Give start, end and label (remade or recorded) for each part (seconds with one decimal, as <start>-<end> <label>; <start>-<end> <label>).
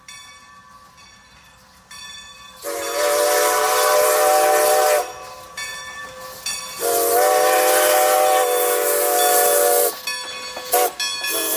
0.0-11.6 recorded